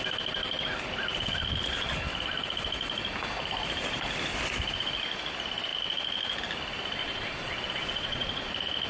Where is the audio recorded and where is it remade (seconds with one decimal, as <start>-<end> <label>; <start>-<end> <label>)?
0.0-7.0 recorded; 7.0-8.5 remade; 8.5-8.9 recorded